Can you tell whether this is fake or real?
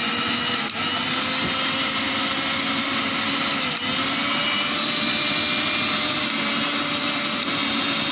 real